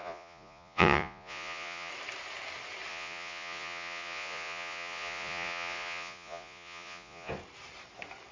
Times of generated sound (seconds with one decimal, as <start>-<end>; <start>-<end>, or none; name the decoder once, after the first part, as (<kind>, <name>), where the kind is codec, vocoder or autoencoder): 0.0-1.9 (vocoder, Vocos); 2.9-7.3